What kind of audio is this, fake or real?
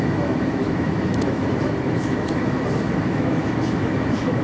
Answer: fake